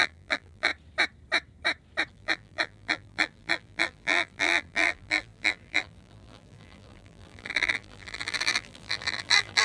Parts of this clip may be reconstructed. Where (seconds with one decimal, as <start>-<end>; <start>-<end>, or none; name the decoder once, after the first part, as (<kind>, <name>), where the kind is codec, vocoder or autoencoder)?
0.0-0.7 (vocoder, BigVGAN v2); 2.1-9.6